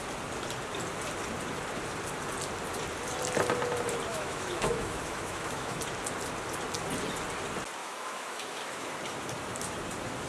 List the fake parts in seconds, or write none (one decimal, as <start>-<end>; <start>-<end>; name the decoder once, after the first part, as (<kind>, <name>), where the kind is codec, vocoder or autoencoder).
4.1-5.8 (autoencoder, DAC-VAE); 7.8-8.9